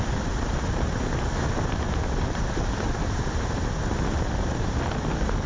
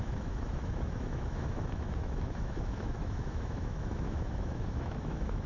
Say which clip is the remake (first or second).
second